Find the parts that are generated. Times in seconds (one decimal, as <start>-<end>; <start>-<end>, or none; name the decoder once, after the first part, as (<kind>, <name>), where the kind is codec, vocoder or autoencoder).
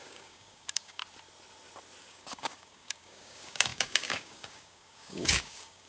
0.0-1.0 (codec, DAC); 2.0-5.9